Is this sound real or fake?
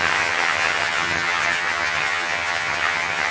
fake